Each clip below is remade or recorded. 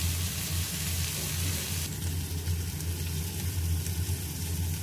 recorded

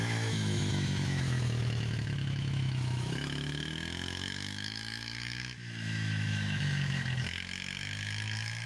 remade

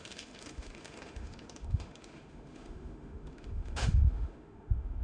remade